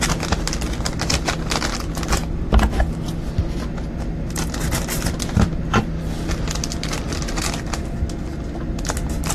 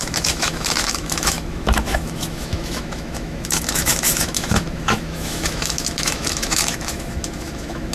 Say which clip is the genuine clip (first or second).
first